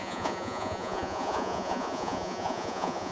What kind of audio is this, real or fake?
fake